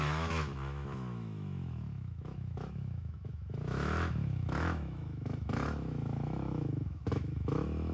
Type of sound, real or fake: fake